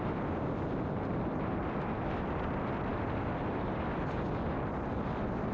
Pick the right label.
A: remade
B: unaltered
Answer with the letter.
A